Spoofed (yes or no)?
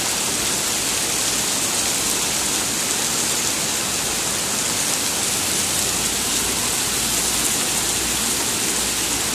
no